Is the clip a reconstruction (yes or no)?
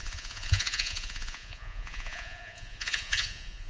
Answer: yes